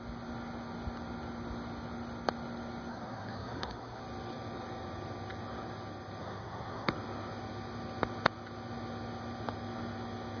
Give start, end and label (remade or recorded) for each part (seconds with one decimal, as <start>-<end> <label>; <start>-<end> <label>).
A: 0.0-2.9 recorded; 2.9-4.0 remade; 4.0-6.2 recorded; 6.2-6.9 remade; 6.9-10.4 recorded